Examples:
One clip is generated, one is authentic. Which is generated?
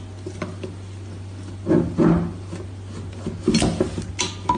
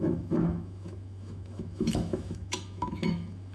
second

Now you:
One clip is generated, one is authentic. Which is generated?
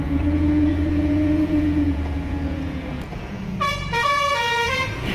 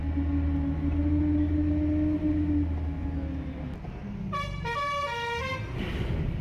first